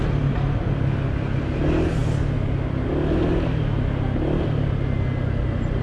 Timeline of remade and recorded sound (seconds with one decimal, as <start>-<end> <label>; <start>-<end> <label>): 0.0-5.8 recorded